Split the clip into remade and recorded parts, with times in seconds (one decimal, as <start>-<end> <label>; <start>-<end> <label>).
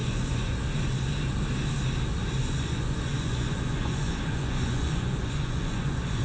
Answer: 0.0-0.6 remade; 0.6-2.4 recorded; 2.4-6.2 remade